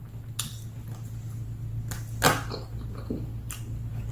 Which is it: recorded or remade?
recorded